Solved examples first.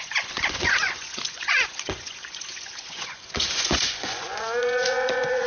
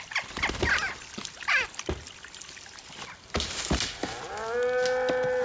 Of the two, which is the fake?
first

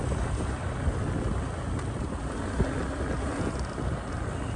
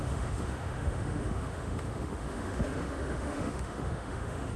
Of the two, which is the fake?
second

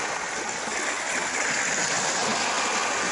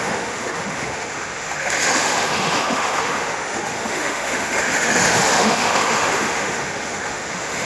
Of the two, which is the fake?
second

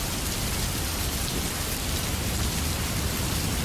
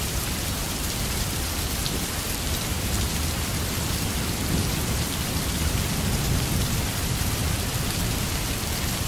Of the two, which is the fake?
second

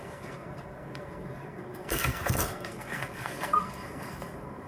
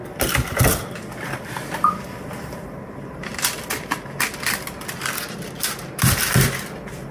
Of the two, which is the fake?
first